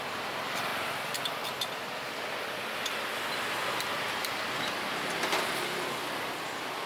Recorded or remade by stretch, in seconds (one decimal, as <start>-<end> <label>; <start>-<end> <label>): 0.0-6.9 recorded